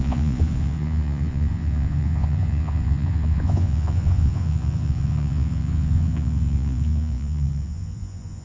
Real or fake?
fake